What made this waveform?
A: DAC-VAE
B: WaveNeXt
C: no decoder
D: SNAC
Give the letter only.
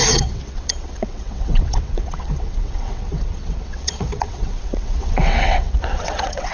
B